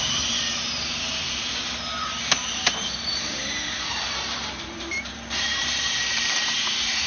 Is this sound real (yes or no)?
no